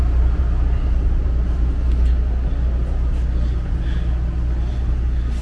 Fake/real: real